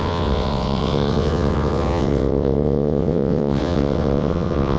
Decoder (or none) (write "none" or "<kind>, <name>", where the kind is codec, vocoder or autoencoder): vocoder, WaveNeXt